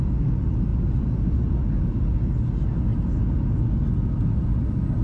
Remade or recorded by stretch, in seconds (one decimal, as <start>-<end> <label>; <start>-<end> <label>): 0.0-5.0 recorded